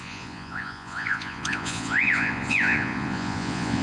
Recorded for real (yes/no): no